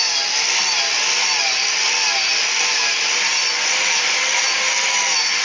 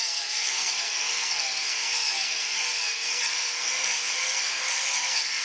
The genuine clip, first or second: first